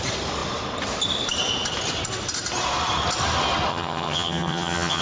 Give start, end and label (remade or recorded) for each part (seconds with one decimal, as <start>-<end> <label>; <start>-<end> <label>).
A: 0.0-3.7 recorded; 3.7-5.0 remade